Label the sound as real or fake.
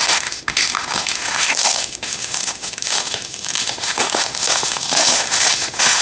fake